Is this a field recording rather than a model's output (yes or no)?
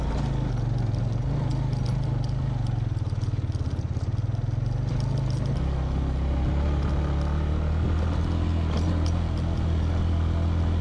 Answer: yes